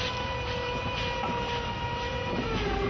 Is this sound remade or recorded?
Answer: recorded